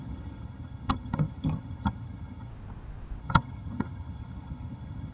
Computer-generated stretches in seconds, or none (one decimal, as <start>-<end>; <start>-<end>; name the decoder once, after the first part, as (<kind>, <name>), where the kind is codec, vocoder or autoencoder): 0.0-2.5 (vocoder, HiFi-GAN); 3.2-5.1